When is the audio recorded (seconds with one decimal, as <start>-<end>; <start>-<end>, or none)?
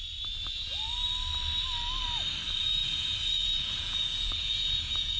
0.0-2.6